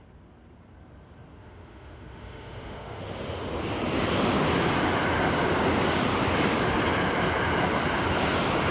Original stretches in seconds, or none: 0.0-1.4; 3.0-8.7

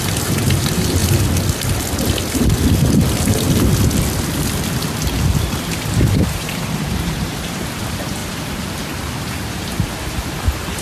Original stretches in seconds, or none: 1.0-6.1

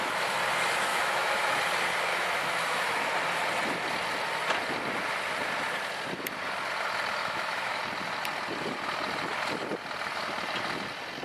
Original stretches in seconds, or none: 0.0-0.9; 1.6-2.1; 3.1-7.2; 7.8-11.2

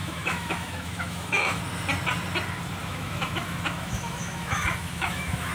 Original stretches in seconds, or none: 1.6-2.8

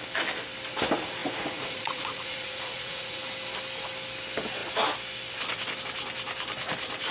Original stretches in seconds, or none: 0.0-1.2; 3.2-7.1

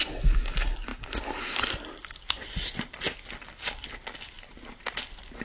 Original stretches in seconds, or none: 0.0-5.4

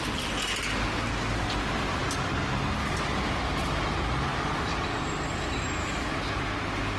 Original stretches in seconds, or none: 0.0-5.8; 6.3-7.0

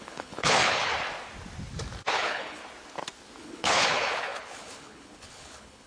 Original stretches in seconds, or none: 0.9-2.1; 2.6-3.4